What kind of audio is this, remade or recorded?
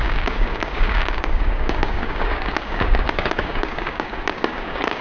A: remade